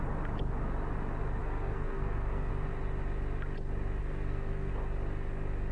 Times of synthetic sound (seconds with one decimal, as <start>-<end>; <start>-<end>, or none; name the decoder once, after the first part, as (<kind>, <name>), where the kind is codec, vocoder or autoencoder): 1.4-2.5 (codec, SNAC); 4.0-4.7